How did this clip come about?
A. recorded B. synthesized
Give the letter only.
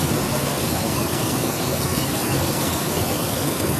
B